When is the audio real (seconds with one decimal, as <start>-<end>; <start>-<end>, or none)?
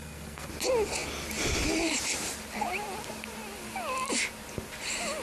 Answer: 0.5-5.2